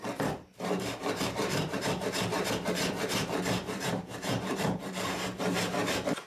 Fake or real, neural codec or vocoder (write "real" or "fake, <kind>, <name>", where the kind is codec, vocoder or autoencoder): fake, vocoder, BigVGAN v2